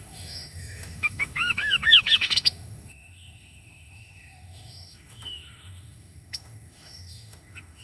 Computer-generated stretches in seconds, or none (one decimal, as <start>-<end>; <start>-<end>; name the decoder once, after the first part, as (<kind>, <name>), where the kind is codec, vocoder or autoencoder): 0.0-7.8 (autoencoder, DAC-VAE)